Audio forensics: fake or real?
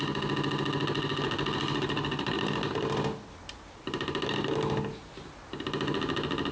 real